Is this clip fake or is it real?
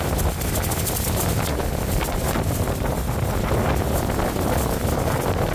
real